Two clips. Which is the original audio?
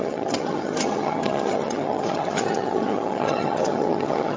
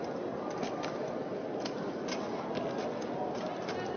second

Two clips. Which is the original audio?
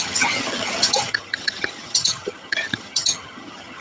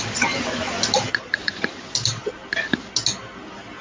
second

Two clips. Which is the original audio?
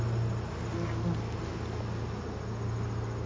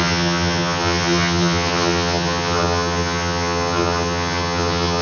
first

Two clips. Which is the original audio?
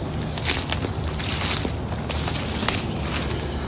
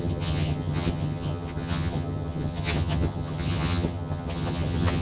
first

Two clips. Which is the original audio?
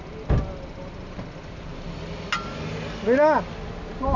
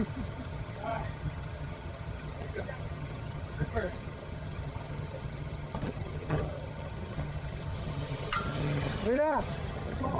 first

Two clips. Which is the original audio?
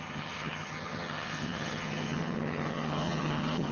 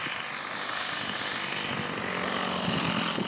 second